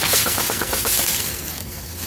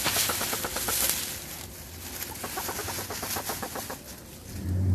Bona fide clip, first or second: second